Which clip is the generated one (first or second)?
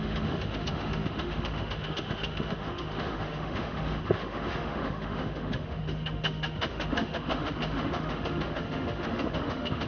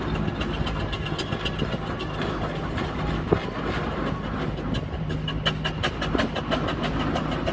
first